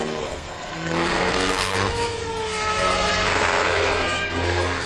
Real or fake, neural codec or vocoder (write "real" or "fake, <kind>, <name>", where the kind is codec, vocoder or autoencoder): fake, codec, SNAC